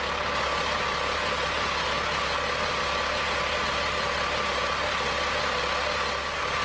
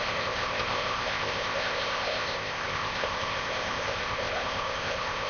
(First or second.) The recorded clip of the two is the first